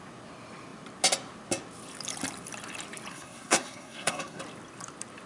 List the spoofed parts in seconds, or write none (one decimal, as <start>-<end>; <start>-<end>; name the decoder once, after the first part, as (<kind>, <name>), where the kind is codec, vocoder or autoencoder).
3.1-4.4 (codec, SNAC)